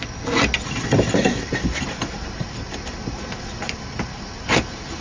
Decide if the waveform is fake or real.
real